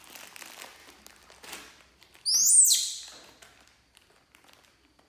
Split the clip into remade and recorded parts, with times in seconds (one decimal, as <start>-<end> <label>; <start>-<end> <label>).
0.0-5.1 recorded